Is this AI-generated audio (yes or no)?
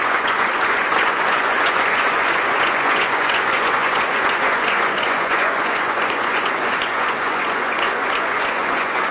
yes